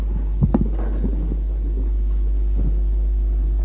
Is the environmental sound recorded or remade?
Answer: recorded